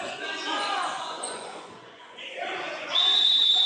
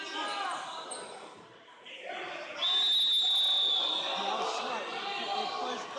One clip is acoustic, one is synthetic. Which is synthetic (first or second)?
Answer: first